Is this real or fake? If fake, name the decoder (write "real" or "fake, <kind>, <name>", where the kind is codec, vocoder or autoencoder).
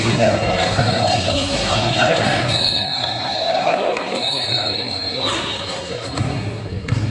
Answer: fake, codec, SNAC